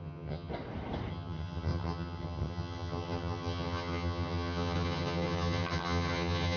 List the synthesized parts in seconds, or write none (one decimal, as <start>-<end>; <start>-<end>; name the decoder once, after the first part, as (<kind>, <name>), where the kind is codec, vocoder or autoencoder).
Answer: 0.0-0.5 (vocoder, HiFi-GAN); 1.1-6.6